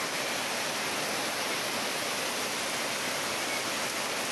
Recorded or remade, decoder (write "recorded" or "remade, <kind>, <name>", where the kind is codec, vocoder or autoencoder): recorded